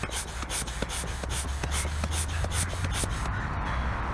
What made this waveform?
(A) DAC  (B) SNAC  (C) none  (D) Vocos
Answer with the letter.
C